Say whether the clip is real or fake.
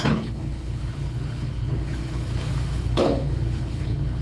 fake